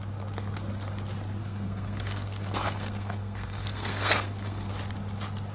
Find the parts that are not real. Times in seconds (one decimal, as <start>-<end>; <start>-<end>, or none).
1.4-4.7